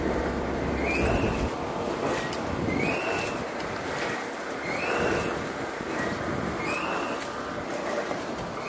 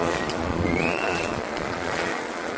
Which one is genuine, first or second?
first